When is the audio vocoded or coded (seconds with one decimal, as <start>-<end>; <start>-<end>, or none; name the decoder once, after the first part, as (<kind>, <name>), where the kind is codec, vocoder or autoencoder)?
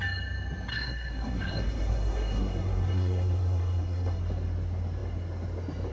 0.7-4.2 (codec, SNAC)